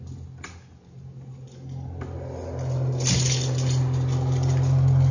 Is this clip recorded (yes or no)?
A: yes